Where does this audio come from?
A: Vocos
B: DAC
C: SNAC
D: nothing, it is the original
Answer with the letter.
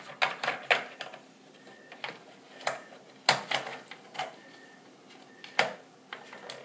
D